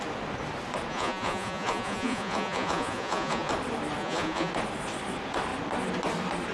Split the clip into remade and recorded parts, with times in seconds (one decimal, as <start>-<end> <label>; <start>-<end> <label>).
0.0-0.9 recorded; 0.9-3.5 remade; 3.5-4.0 recorded; 4.0-4.5 remade; 4.5-6.5 recorded